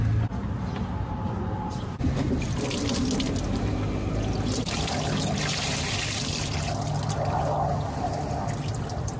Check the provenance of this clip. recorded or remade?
recorded